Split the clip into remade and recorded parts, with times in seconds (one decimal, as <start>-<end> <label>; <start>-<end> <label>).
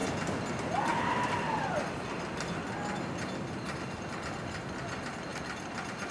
0.0-6.1 recorded